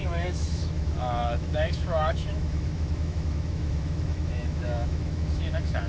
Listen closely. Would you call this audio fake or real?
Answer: fake